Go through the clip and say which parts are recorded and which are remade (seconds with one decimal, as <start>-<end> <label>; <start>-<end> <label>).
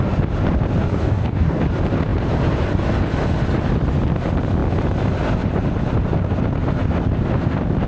0.0-0.8 recorded; 0.8-1.6 remade; 1.6-7.9 recorded